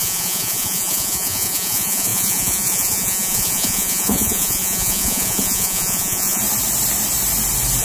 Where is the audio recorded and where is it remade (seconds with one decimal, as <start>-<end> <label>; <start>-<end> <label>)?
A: 0.0-6.4 remade; 6.4-7.8 recorded